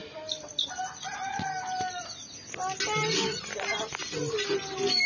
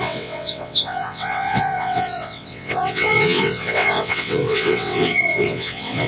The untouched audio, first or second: first